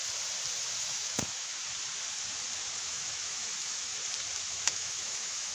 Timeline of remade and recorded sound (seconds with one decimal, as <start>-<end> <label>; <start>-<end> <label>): 0.0-0.8 recorded; 0.8-1.5 remade; 1.5-2.8 recorded; 2.8-3.9 remade; 3.9-4.5 recorded; 4.5-5.5 remade